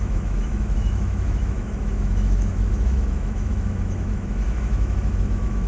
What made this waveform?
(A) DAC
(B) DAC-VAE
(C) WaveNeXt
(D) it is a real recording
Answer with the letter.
B